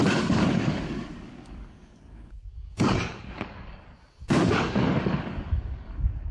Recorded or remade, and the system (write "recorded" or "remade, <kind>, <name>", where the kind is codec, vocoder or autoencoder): remade, codec, DAC